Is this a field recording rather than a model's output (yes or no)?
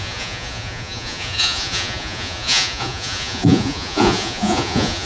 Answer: no